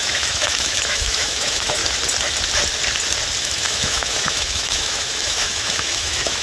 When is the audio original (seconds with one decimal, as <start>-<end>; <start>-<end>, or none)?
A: 1.8-3.4